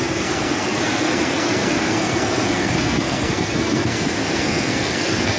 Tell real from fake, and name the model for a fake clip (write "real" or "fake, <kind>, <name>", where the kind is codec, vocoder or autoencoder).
fake, codec, SNAC